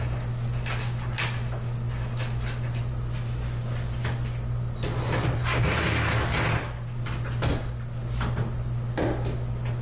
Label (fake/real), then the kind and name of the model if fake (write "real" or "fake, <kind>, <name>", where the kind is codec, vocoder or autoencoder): real